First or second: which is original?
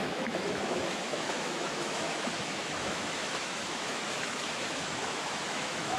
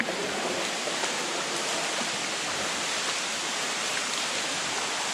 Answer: second